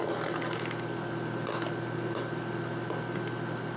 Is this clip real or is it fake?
real